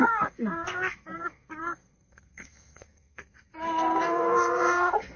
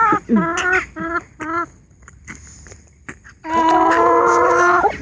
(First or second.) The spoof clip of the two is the first